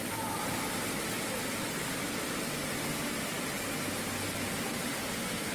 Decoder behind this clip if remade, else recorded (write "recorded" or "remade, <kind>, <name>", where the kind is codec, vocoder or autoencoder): recorded